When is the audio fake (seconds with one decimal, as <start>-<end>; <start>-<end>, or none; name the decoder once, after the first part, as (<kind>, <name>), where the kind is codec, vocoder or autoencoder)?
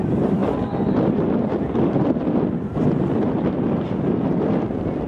none